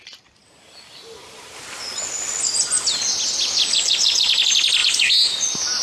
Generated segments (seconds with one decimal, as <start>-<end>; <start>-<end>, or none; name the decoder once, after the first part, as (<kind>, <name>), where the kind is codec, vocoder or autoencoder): 0.0-0.4 (vocoder, BigVGAN v2); 3.4-4.8